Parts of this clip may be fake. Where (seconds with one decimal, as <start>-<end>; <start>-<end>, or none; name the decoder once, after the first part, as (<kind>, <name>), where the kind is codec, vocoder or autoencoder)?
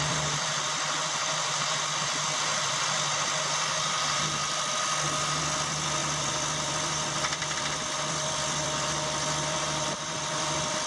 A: 0.0-4.4 (vocoder, BigVGAN v2); 5.4-10.9